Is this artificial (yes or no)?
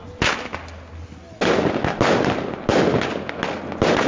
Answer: no